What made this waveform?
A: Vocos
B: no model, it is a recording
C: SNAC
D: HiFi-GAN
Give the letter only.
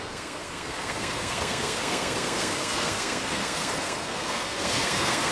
C